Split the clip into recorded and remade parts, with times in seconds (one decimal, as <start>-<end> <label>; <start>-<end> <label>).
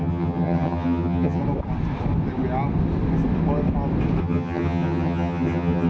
0.0-1.4 remade; 1.4-4.2 recorded; 4.2-5.9 remade